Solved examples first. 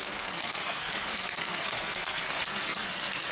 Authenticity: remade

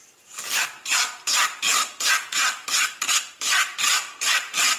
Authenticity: remade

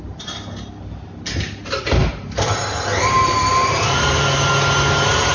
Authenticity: recorded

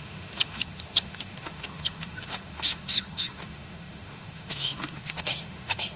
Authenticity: remade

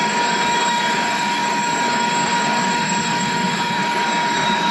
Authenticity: remade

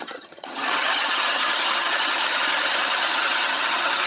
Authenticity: remade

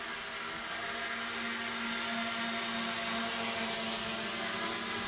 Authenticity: recorded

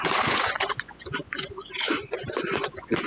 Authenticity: remade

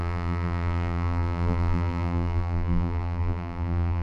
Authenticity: remade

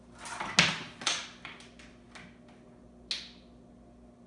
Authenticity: recorded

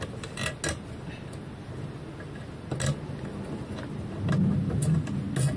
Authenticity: recorded